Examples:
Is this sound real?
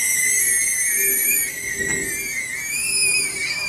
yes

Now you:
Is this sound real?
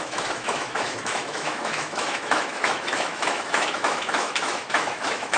no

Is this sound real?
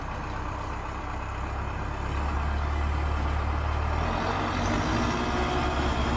yes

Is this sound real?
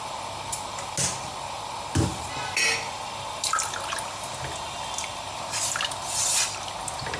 yes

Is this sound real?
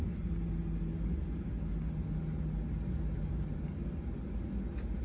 yes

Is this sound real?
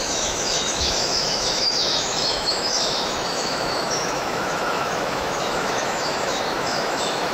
no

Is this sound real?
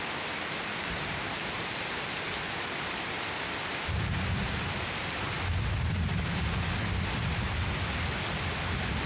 yes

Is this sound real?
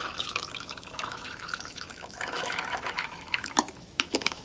no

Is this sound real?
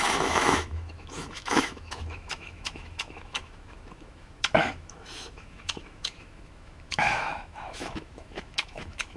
no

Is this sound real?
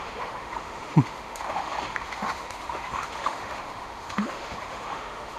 no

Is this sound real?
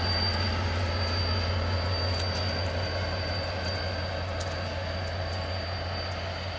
yes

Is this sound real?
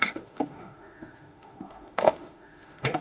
no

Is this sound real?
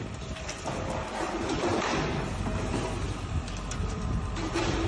yes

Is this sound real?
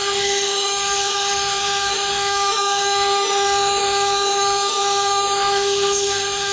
no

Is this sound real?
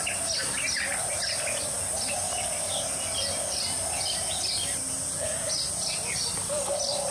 yes